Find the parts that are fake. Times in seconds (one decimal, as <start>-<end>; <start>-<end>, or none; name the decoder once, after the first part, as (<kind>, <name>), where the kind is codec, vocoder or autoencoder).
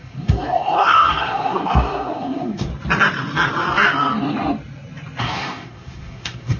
0.0-2.7 (codec, SNAC); 5.2-6.6